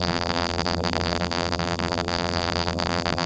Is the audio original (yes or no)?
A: no